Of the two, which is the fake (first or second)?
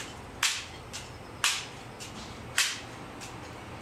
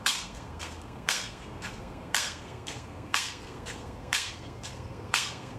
second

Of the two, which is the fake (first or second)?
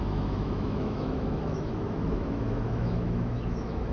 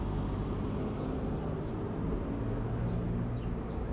first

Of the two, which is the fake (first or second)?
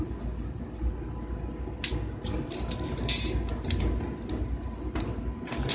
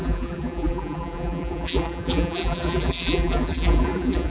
second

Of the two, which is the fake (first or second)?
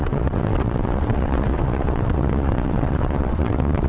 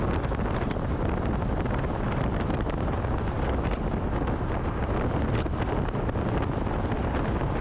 first